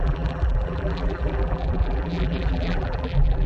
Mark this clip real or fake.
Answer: fake